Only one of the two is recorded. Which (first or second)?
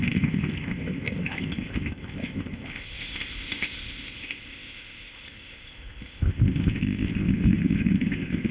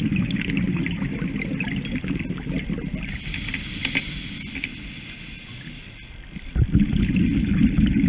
second